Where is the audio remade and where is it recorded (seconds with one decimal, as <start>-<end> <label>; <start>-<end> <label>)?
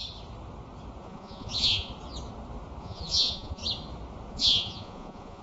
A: 0.0-1.0 recorded; 1.0-1.9 remade; 1.9-2.8 recorded; 2.8-3.6 remade; 3.6-4.3 recorded; 4.3-5.4 remade